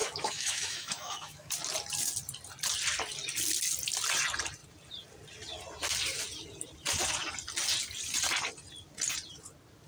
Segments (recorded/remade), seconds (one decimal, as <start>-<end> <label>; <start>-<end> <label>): 0.0-1.5 remade; 1.5-9.9 recorded